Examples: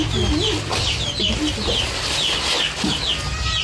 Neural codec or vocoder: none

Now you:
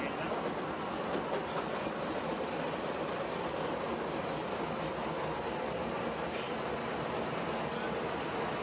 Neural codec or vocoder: none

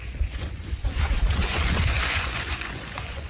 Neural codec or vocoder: vocoder, Vocos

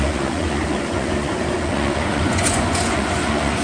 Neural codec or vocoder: vocoder, Vocos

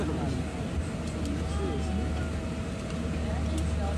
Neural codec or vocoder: none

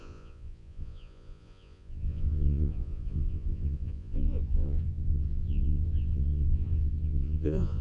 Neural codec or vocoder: vocoder, Vocos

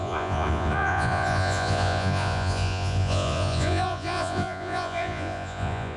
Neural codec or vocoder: vocoder, Vocos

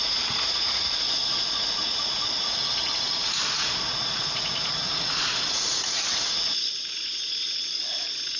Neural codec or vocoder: vocoder, Vocos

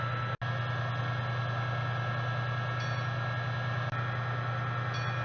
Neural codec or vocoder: none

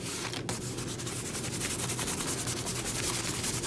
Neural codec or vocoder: none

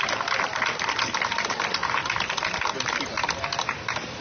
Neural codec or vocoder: none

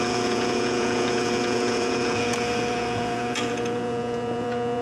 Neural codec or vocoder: vocoder, Vocos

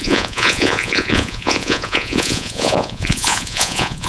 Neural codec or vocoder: vocoder, Vocos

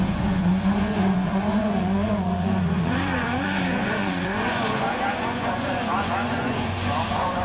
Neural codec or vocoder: vocoder, Vocos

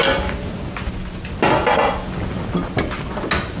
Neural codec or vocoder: none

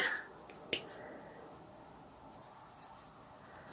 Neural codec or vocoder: none